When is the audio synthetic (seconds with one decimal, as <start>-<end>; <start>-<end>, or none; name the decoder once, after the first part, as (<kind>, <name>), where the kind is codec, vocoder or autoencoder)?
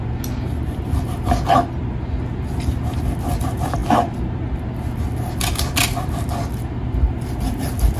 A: none